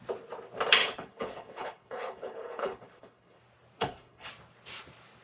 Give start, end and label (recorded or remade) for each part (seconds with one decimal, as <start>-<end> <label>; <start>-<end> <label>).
0.0-0.8 recorded; 0.8-3.4 remade; 3.4-3.8 recorded; 3.8-4.3 remade; 4.3-5.2 recorded